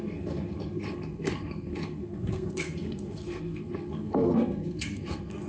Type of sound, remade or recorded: remade